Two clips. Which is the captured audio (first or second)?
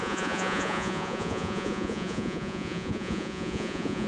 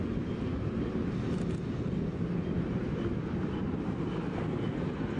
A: second